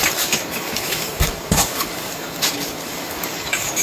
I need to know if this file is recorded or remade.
remade